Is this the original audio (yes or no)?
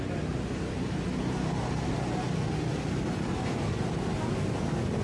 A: yes